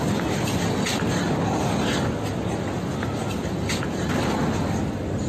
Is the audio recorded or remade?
recorded